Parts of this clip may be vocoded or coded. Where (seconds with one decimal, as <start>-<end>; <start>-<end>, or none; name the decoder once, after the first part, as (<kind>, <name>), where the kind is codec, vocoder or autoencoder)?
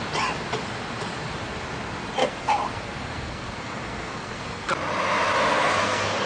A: 2.2-4.7 (codec, SNAC); 5.5-6.3